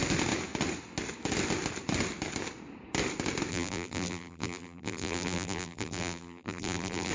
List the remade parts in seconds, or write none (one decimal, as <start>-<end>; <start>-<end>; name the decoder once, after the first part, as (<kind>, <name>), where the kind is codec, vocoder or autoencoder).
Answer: 3.5-7.1 (vocoder, BigVGAN v2)